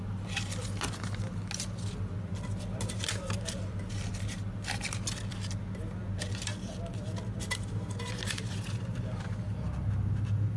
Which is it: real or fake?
real